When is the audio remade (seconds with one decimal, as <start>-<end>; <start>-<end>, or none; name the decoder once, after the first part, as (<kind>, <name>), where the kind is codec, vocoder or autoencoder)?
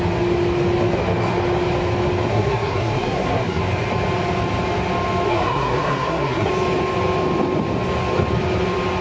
2.3-3.6 (codec, SNAC); 5.3-6.5